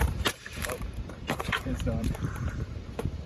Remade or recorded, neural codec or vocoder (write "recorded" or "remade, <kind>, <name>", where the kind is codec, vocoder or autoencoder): remade, vocoder, BigVGAN v2